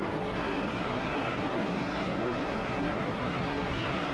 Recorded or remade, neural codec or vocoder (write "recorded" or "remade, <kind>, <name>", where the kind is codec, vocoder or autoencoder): remade, codec, SNAC